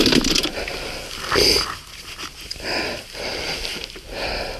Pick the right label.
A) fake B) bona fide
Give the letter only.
B